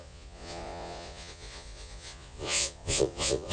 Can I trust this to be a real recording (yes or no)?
no